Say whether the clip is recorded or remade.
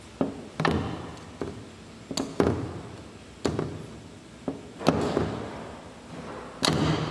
recorded